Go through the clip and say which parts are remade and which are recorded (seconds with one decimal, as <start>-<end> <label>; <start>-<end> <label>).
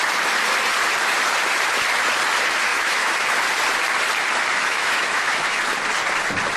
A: 0.0-2.7 recorded; 2.7-3.2 remade; 3.2-4.5 recorded; 4.5-5.6 remade; 5.6-6.6 recorded